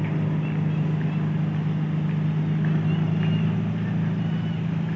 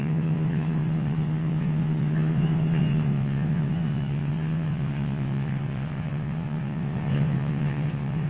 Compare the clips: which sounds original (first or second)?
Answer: first